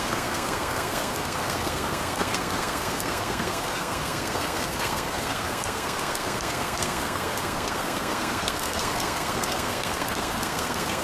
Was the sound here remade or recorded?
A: remade